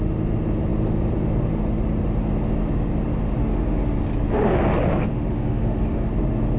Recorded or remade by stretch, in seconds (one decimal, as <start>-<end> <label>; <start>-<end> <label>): 0.0-3.4 recorded; 3.4-4.0 remade; 4.0-5.1 recorded; 5.1-6.1 remade; 6.1-6.6 recorded